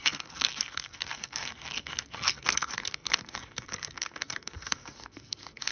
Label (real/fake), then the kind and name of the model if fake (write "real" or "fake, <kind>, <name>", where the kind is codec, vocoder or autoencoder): fake, codec, SNAC